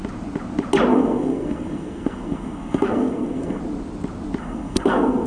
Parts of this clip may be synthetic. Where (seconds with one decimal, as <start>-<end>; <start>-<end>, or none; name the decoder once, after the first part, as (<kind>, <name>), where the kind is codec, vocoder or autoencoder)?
0.9-3.6 (codec, SNAC); 4.4-5.3